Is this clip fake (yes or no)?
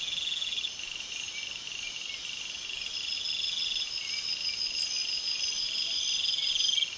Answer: no